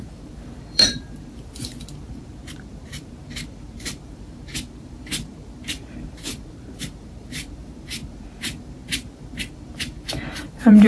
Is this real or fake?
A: fake